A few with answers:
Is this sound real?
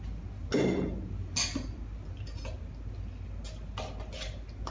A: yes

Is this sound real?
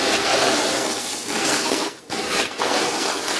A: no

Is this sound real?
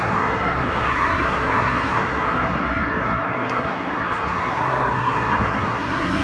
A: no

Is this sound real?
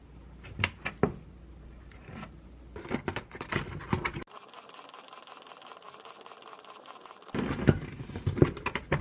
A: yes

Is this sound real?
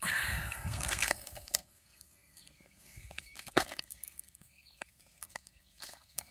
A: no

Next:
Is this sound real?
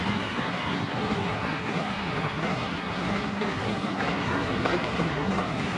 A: no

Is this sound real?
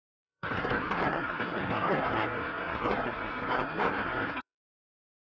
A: no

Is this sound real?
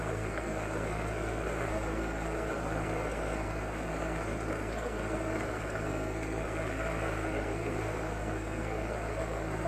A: no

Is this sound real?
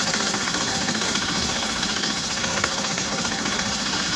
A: no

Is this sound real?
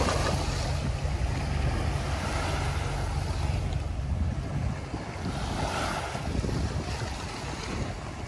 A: yes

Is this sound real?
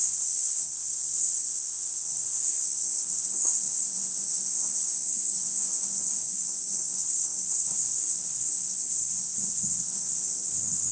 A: no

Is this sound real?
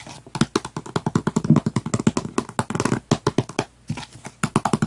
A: yes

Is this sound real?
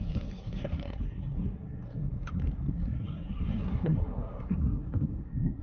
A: no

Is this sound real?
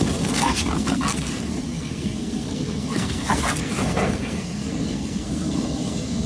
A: no